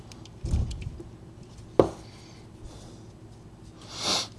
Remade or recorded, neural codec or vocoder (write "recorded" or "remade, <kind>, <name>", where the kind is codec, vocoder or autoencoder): recorded